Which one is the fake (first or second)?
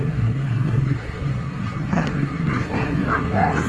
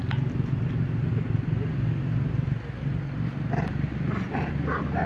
first